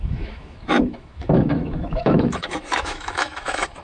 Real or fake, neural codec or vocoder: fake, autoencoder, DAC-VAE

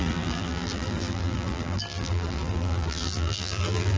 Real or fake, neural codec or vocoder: fake, vocoder, BigVGAN v2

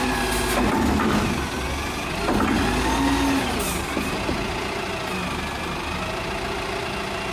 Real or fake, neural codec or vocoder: real